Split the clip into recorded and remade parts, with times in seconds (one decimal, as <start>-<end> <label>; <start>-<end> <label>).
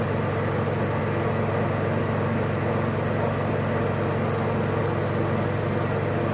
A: 0.0-6.3 recorded